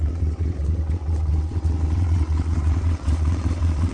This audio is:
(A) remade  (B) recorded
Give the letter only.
A